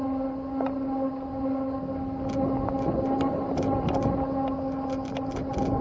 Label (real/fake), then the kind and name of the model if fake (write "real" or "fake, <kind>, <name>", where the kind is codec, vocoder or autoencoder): real